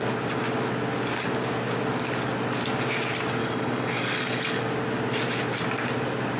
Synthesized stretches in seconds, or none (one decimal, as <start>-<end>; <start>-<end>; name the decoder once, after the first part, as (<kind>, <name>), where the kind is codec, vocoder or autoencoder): 3.4-4.6 (codec, DAC)